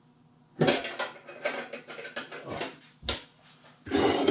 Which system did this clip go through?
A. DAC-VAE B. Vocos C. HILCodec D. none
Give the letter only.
D